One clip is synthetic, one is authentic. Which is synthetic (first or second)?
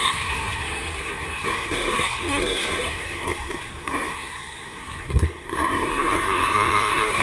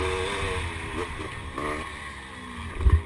first